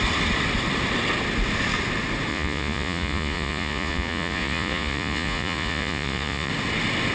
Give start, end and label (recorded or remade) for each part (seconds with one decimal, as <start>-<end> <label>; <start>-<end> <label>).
0.0-2.3 recorded; 2.3-6.5 remade; 6.5-7.1 recorded